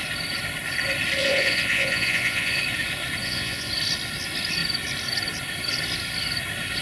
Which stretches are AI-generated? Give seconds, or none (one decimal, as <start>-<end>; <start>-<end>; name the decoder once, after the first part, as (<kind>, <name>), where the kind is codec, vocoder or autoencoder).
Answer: 1.2-2.6 (vocoder, Vocos); 3.2-3.7